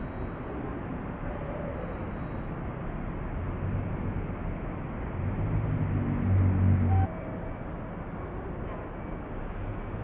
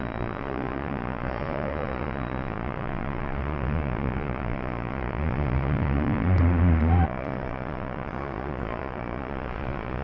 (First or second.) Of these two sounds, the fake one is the second